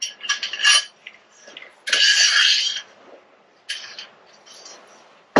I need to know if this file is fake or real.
real